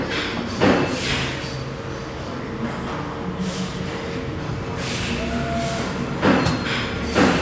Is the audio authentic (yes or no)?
yes